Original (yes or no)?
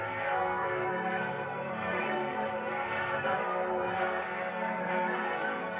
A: no